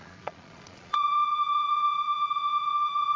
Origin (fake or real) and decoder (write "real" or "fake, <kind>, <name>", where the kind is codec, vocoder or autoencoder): fake, vocoder, Vocos